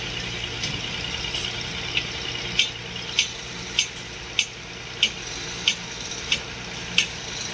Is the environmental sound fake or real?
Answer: real